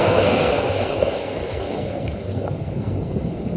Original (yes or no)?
no